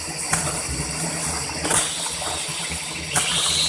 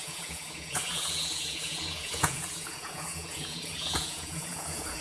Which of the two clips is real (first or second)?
first